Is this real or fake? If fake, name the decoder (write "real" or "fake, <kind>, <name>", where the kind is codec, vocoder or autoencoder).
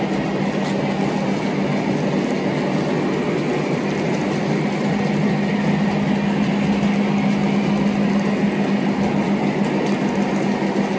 real